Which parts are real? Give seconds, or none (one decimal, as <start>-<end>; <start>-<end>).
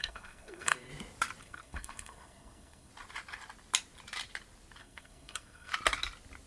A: 0.9-1.4; 2.9-4.8; 5.7-6.5